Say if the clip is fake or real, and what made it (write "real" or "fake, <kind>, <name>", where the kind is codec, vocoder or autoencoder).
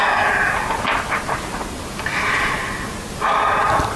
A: real